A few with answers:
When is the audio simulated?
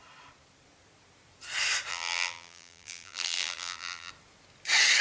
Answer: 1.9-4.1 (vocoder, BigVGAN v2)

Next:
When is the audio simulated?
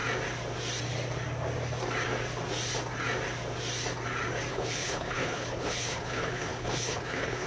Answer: 4.5-7.5 (codec, HILCodec)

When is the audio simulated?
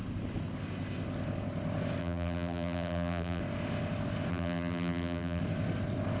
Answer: 2.0-3.4 (vocoder, BigVGAN v2); 4.3-5.4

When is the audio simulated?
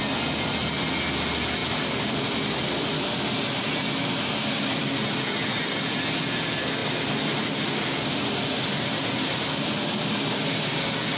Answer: none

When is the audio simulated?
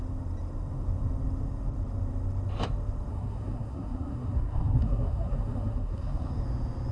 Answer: 3.1-6.3 (codec, SNAC)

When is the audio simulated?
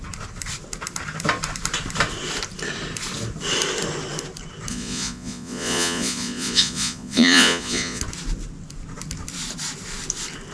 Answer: 4.7-8.0 (vocoder, Vocos)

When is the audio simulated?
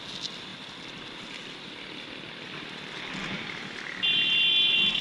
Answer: none